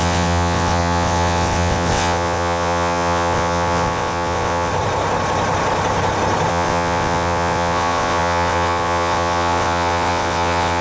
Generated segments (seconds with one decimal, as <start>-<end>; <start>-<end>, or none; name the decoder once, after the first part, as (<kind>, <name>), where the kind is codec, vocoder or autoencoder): 0.0-4.7 (vocoder, WaveNeXt); 6.5-10.8